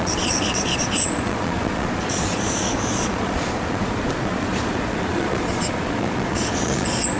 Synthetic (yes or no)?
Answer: yes